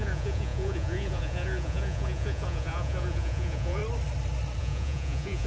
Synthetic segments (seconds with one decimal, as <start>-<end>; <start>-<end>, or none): 0.0-3.8; 4.6-5.5